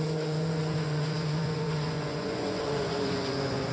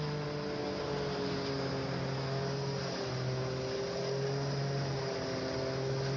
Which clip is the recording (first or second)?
second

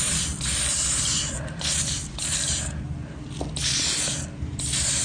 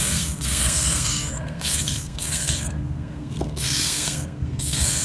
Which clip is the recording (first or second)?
first